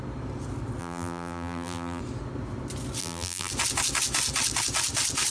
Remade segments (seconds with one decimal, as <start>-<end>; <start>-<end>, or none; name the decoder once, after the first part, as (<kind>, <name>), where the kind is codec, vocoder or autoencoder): 0.8-2.0 (vocoder, BigVGAN v2); 3.0-3.5